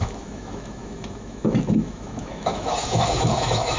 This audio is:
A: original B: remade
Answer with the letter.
B